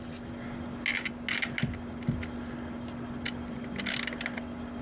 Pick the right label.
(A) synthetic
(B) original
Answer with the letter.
B